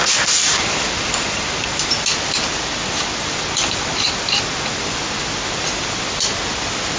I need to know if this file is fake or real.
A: real